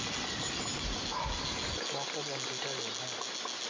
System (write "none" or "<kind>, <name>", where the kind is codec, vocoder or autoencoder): none